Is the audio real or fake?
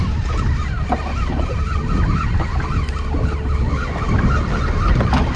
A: real